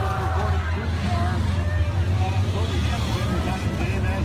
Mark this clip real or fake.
real